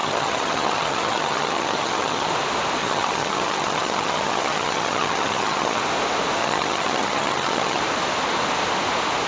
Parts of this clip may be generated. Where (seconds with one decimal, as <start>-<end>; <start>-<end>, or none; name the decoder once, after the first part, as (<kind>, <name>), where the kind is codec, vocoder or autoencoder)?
0.0-2.3 (vocoder, HiFi-GAN); 2.8-5.8; 6.4-7.8